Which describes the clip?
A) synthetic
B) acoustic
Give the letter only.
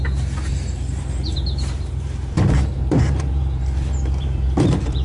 A